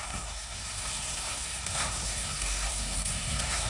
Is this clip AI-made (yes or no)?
yes